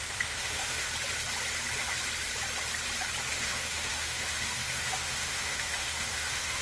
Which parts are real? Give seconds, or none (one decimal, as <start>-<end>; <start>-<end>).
0.9-3.3